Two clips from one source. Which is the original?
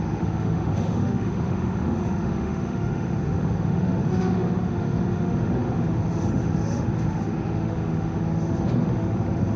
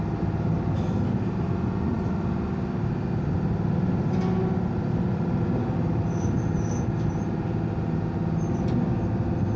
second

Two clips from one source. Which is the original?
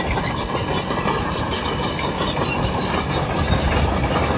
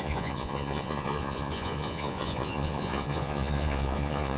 first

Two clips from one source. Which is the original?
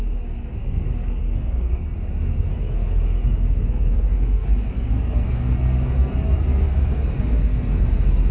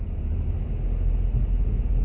second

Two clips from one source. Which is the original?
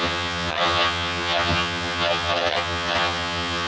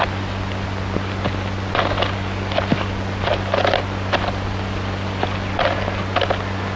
second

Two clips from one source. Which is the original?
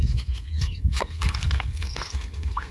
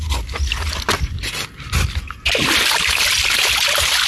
second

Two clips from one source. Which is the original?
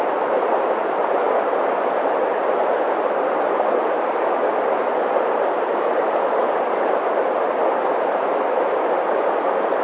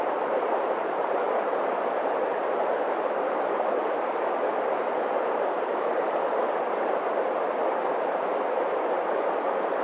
first